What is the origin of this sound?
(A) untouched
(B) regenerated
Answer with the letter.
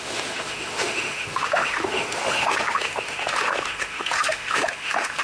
B